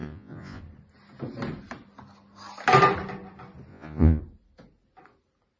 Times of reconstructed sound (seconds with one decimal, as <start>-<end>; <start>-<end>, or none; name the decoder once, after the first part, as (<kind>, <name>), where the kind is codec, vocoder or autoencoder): 0.0-0.6 (vocoder, Vocos); 3.7-4.2